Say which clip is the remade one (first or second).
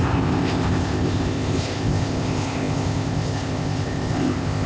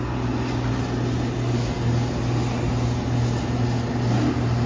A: first